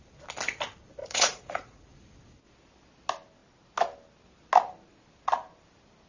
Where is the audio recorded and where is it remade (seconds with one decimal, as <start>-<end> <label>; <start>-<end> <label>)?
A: 0.0-1.0 recorded; 1.0-1.8 remade; 1.8-6.1 recorded